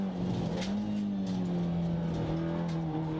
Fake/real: real